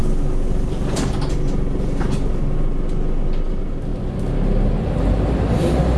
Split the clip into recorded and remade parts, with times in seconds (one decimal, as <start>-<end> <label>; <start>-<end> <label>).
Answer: 0.0-6.0 recorded